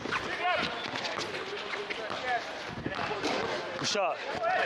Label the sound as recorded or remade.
recorded